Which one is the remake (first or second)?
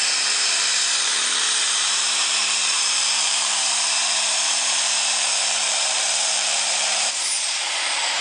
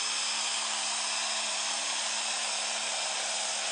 first